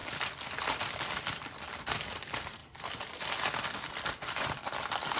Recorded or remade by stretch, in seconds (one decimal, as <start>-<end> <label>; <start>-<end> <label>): 0.0-1.6 remade; 1.6-2.6 recorded; 2.6-3.7 remade; 3.7-5.2 recorded